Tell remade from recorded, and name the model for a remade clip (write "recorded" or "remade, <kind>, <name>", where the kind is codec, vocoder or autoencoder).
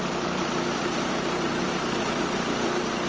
recorded